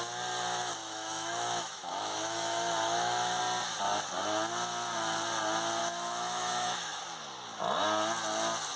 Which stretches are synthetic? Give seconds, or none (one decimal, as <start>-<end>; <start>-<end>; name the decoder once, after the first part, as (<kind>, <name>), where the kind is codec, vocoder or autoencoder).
0.8-3.4 (autoencoder, DAC-VAE); 5.8-7.0